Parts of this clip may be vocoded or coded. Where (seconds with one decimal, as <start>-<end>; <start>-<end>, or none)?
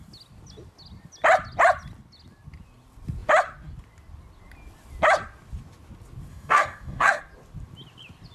6.3-7.2